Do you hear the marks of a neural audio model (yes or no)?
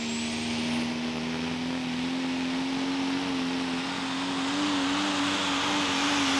no